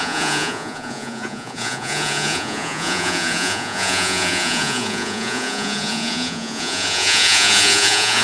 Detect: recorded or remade remade